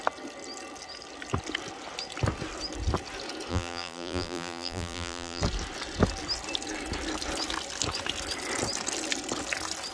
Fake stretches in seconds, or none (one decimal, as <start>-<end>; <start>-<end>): 3.5-5.4